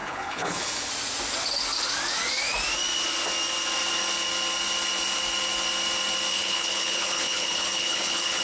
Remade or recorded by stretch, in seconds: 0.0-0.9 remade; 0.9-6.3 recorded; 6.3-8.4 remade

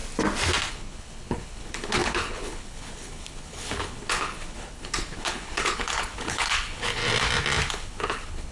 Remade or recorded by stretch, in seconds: 0.0-0.7 recorded; 0.7-7.0 remade; 7.0-7.7 recorded; 7.7-8.5 remade

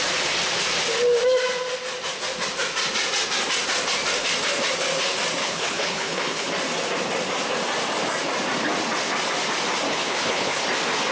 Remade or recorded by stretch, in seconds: 0.0-5.4 recorded; 5.4-6.5 remade; 6.5-9.9 recorded; 9.9-10.6 remade; 10.6-11.1 recorded

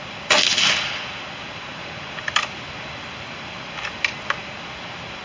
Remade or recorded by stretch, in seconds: 0.0-5.2 recorded

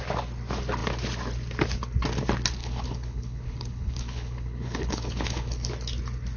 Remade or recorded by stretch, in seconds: 0.0-2.6 recorded; 2.6-5.7 remade; 5.7-6.4 recorded